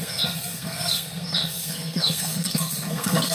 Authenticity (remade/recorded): remade